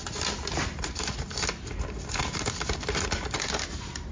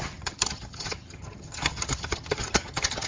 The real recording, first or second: first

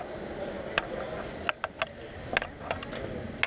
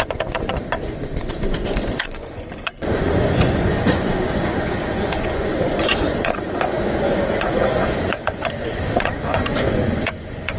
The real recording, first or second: first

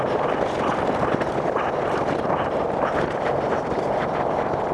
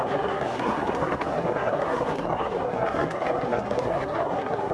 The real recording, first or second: first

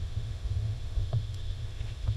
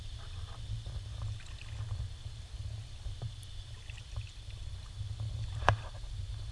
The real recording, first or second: second